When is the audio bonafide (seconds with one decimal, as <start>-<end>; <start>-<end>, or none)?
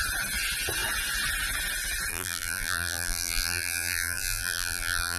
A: 0.0-2.1